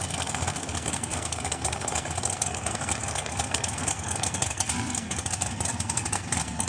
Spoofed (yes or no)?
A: yes